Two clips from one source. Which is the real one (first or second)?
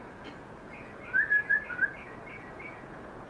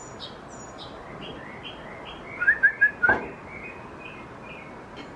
second